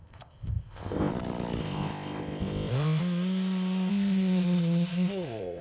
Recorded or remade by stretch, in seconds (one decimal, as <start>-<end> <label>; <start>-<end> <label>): 0.0-1.1 remade; 1.1-1.6 recorded; 1.6-3.0 remade; 3.0-3.9 recorded; 3.9-5.6 remade